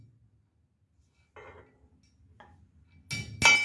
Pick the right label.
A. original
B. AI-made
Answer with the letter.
A